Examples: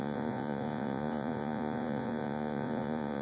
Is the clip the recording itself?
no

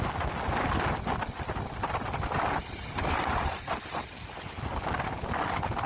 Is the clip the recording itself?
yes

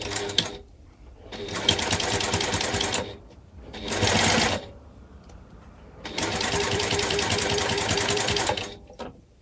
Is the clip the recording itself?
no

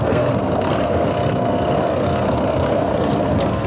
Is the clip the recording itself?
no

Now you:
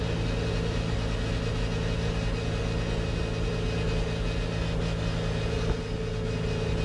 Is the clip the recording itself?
yes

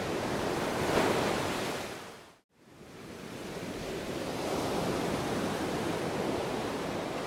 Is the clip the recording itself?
no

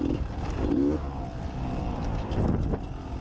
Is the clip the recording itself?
yes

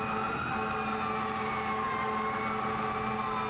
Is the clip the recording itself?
yes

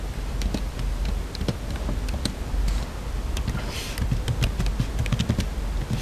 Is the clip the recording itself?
yes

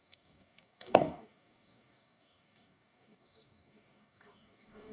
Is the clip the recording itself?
no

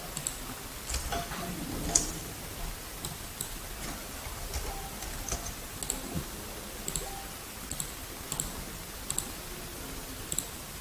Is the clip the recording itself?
yes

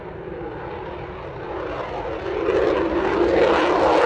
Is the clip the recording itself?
yes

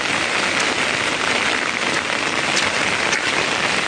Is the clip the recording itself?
yes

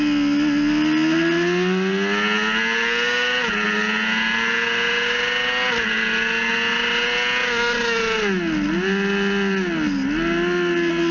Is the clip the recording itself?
yes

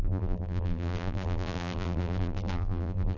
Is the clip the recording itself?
no